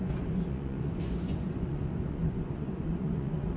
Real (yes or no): no